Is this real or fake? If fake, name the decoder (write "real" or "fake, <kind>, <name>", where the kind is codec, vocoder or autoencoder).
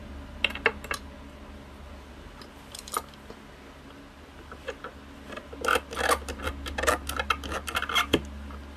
real